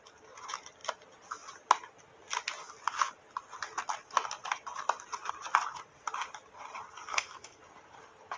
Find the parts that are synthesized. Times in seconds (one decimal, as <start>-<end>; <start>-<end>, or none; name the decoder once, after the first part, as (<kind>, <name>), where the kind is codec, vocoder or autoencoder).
7.1-7.6 (codec, SNAC)